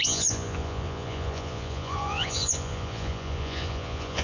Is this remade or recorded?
remade